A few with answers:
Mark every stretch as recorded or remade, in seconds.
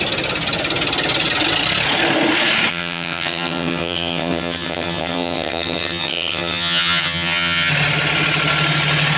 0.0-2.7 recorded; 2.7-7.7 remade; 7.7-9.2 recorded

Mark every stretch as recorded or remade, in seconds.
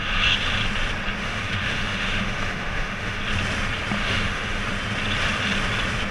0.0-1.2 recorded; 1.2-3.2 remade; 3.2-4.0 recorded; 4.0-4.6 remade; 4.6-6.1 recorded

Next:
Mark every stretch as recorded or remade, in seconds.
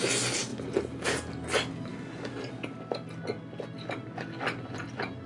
0.0-5.3 recorded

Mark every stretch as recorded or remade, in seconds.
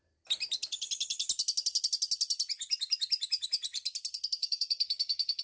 0.0-4.4 recorded; 4.4-5.4 remade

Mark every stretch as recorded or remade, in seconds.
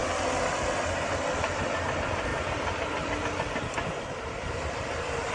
0.0-2.3 recorded; 2.3-5.3 remade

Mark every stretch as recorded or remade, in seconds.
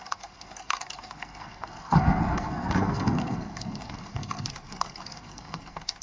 0.0-6.0 remade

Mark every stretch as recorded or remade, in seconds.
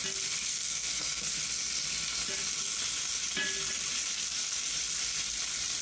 0.0-0.5 recorded; 0.5-1.3 remade; 1.3-5.8 recorded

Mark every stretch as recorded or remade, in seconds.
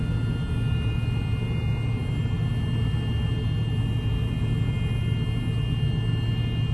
0.0-6.7 recorded